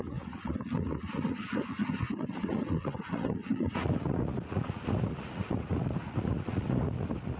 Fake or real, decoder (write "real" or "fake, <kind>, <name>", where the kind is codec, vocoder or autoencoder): fake, vocoder, Vocos